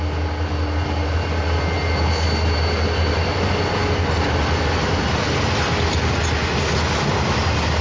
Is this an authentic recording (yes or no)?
yes